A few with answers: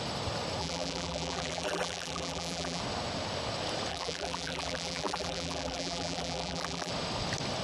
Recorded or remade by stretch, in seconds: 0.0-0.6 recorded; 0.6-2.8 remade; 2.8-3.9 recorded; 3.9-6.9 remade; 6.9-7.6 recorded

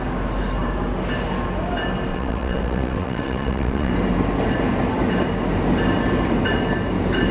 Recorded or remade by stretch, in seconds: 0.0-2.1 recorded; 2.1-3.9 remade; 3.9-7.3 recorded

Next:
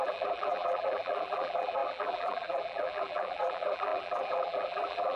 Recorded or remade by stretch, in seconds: 0.0-5.2 remade

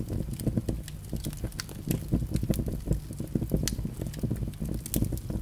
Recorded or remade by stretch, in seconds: 0.0-5.4 recorded

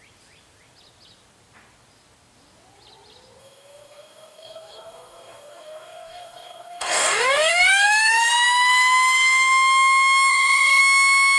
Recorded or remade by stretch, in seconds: 0.0-3.4 recorded; 3.4-8.3 remade; 8.3-10.3 recorded; 10.3-10.8 remade; 10.8-11.4 recorded

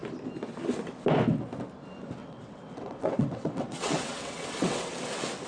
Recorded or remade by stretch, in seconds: 0.0-2.2 recorded; 2.2-4.9 remade; 4.9-5.5 recorded